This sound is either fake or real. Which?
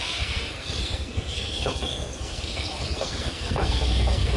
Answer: fake